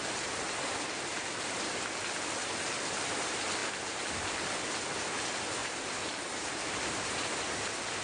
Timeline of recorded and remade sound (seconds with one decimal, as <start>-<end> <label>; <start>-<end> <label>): 0.0-1.1 recorded; 1.1-1.7 remade; 1.7-5.6 recorded; 5.6-7.2 remade; 7.2-8.0 recorded